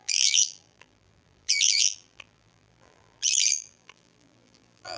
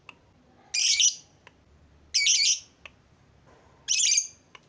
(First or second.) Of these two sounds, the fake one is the first